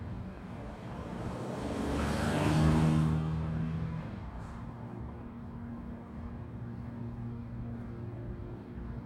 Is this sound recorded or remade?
remade